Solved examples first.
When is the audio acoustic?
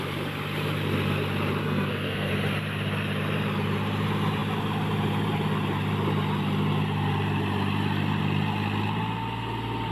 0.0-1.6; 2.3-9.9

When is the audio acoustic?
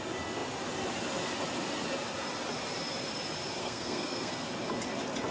0.0-3.6; 4.3-5.3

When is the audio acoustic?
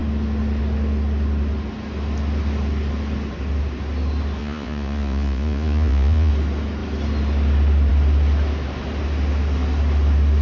0.0-4.4; 6.3-10.4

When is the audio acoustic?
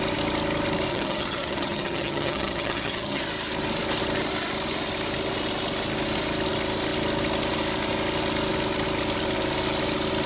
0.0-0.9; 3.2-10.3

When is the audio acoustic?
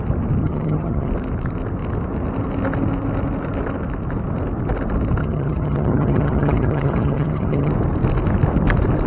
0.0-0.4; 1.1-5.2; 7.7-9.1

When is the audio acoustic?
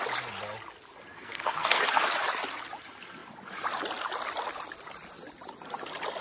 0.0-1.1; 1.8-6.2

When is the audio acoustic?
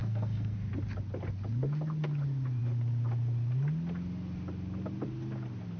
0.7-5.8